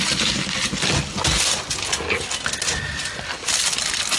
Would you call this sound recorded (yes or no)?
yes